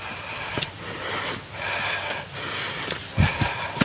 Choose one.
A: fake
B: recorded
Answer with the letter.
B